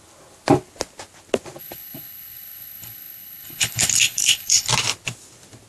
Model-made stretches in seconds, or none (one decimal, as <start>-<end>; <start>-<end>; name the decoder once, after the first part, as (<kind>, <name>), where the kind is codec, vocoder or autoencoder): 1.6-4.7 (codec, HILCodec)